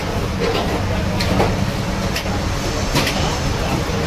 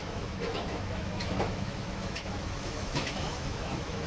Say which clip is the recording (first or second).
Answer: first